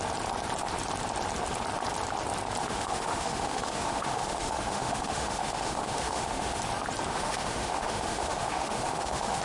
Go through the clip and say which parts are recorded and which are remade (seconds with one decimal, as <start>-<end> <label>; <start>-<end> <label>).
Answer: 0.0-2.6 recorded; 2.6-6.6 remade; 6.6-7.1 recorded; 7.1-9.4 remade